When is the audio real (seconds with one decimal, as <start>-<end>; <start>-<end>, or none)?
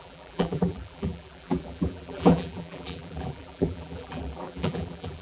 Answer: none